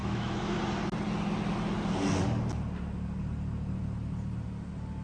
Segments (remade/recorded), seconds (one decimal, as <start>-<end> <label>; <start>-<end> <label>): 0.0-0.6 remade; 0.6-5.0 recorded